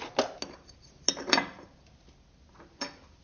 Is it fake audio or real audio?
real